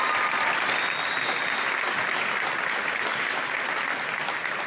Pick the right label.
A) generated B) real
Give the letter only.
B